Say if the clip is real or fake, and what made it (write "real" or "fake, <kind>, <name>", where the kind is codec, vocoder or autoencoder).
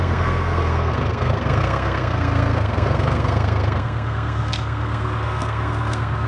fake, codec, SNAC